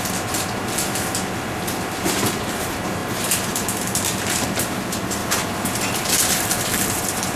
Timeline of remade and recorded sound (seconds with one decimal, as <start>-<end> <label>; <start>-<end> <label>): 0.0-5.2 remade; 5.2-6.2 recorded; 6.2-7.4 remade